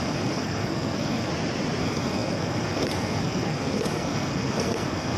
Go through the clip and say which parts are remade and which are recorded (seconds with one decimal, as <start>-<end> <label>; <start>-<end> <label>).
0.0-1.3 remade; 1.3-1.8 recorded; 1.8-5.2 remade